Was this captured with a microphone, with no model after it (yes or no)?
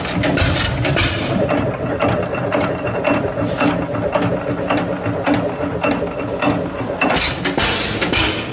yes